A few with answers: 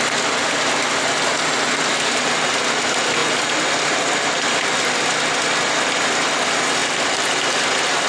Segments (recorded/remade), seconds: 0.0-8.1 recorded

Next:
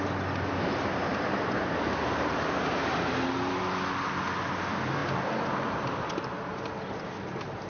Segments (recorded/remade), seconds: 0.0-1.1 recorded; 1.1-3.0 remade; 3.0-5.0 recorded; 5.0-7.0 remade; 7.0-7.7 recorded

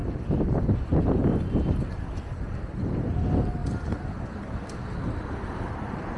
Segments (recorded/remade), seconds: 0.0-6.2 recorded